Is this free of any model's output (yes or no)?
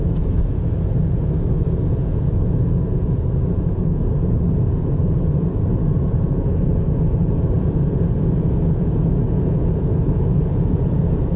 no